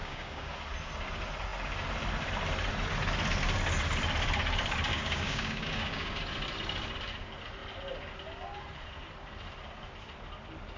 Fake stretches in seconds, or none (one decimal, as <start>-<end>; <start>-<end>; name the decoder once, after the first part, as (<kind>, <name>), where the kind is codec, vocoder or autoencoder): 0.0-0.5 (codec, DAC); 4.9-6.2